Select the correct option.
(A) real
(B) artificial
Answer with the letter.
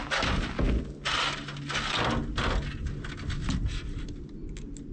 A